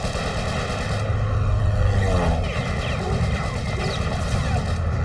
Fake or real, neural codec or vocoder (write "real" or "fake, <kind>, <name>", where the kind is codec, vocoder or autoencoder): real